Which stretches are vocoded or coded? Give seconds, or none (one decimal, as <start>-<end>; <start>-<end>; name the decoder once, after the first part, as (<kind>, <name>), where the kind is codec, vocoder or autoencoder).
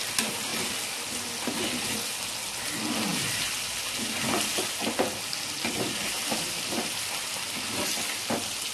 none